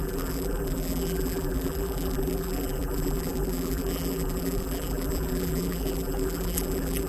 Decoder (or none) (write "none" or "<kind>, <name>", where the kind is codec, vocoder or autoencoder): vocoder, BigVGAN v2